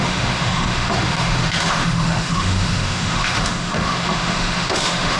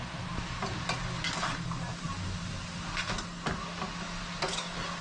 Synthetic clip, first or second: first